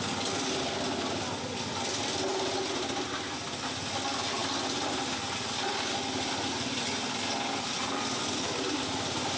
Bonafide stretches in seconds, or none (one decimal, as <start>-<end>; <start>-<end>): 0.0-9.4